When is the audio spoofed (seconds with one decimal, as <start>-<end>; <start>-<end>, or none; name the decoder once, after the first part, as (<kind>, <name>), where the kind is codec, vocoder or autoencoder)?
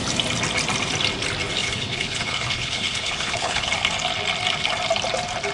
1.6-3.7 (codec, HILCodec)